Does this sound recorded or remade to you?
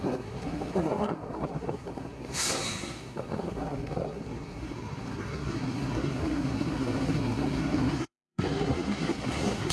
remade